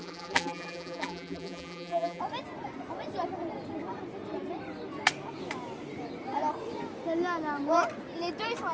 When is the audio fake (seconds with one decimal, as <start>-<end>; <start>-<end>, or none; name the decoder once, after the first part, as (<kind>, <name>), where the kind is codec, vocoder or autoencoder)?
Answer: 0.0-2.2 (vocoder, BigVGAN v2)